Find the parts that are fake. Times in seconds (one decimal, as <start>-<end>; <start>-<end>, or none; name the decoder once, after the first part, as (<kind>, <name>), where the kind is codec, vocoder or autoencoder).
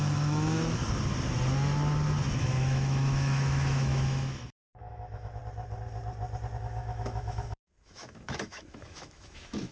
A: 0.0-0.8 (autoencoder, DAC-VAE); 2.4-5.4; 6.6-9.7